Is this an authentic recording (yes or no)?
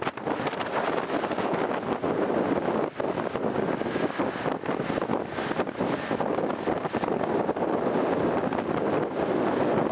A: yes